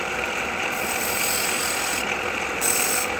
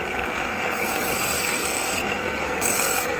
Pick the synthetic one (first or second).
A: second